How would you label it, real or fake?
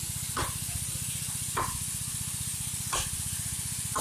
real